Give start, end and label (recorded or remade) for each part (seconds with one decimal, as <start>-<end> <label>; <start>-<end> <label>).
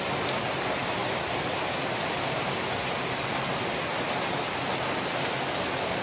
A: 0.0-6.0 recorded